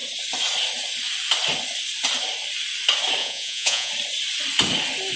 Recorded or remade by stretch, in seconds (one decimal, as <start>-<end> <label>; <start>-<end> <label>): 0.0-3.2 recorded; 3.2-3.9 remade; 3.9-5.2 recorded